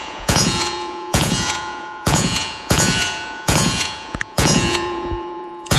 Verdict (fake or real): fake